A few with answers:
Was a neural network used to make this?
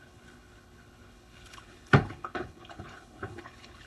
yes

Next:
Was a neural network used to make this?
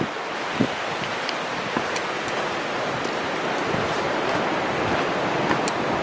no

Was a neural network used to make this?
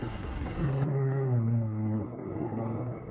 yes